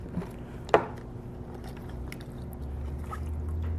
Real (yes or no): yes